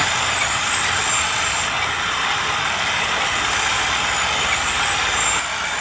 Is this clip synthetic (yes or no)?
no